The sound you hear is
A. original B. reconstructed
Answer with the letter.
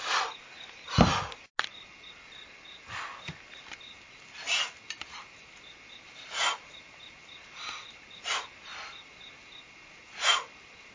A